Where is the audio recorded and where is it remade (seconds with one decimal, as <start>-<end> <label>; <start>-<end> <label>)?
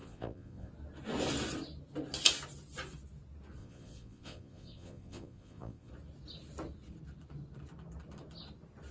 0.0-0.7 remade; 0.7-3.6 recorded; 3.6-5.9 remade; 5.9-8.9 recorded